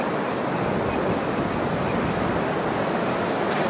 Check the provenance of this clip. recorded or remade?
recorded